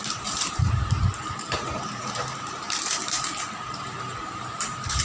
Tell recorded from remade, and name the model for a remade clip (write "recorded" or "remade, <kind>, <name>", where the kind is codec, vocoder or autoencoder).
remade, vocoder, BigVGAN v2